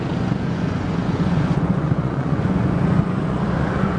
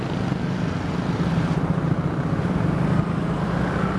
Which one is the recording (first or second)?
second